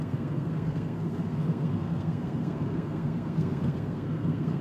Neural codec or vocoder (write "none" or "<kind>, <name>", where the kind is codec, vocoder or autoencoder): codec, SNAC